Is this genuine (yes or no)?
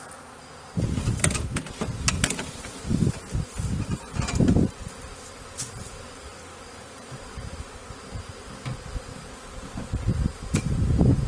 yes